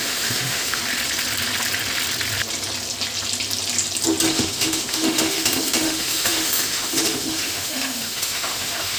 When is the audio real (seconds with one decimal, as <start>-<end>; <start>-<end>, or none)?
0.8-4.3